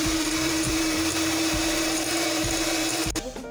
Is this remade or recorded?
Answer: remade